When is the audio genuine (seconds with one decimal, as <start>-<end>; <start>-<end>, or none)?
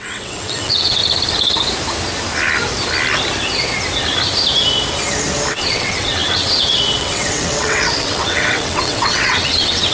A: 1.0-5.5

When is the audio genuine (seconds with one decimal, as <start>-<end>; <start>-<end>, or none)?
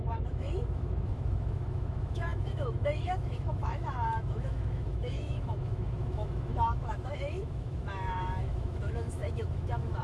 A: none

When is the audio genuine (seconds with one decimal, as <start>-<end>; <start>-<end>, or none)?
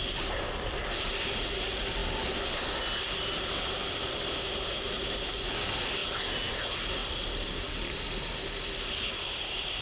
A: 0.0-9.8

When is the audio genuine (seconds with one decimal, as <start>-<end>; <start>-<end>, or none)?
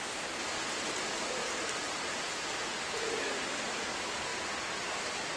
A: 0.0-5.4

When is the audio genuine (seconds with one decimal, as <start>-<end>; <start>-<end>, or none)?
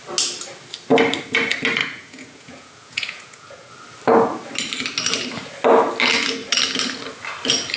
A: 0.0-1.8; 3.7-7.8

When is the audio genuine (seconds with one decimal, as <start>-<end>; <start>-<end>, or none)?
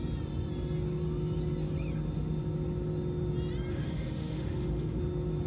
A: 0.0-3.7; 5.0-5.5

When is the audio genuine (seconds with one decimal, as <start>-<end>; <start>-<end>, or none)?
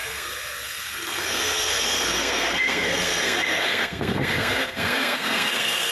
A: none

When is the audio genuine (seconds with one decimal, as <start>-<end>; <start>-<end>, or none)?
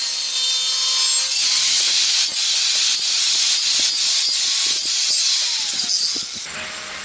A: 0.0-7.0